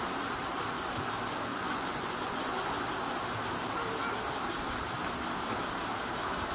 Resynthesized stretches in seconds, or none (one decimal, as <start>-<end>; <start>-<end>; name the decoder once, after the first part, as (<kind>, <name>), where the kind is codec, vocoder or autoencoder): 1.5-2.8 (vocoder, Vocos)